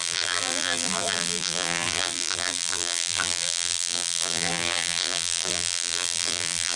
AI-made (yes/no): yes